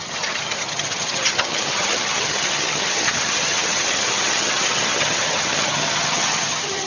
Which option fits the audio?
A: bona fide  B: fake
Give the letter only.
B